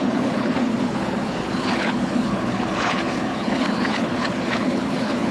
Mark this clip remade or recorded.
remade